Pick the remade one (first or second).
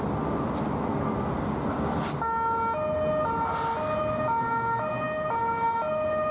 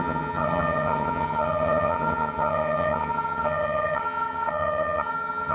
second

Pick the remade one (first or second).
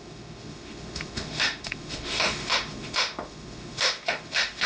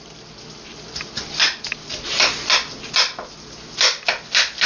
first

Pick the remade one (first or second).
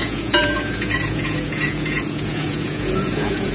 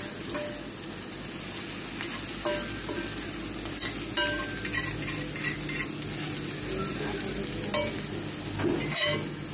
first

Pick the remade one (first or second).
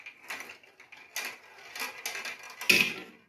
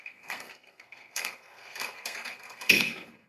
second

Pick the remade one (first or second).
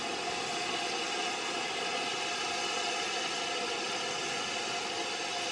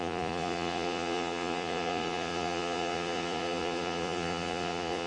second